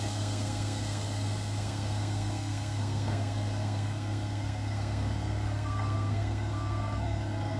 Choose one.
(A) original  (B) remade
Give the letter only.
B